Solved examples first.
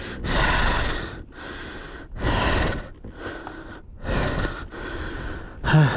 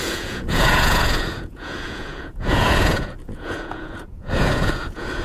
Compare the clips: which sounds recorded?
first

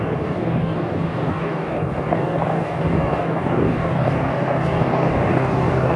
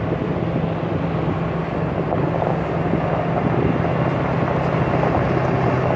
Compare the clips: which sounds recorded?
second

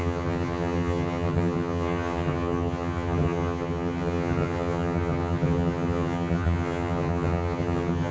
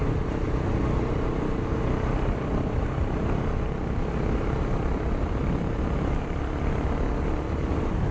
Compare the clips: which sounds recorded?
second